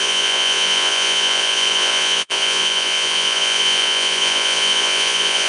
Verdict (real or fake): fake